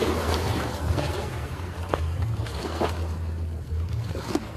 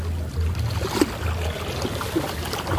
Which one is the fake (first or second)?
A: first